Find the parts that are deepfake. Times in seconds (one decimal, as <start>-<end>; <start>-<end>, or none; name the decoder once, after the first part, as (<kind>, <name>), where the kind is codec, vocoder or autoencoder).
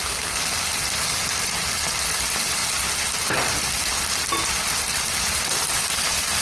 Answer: none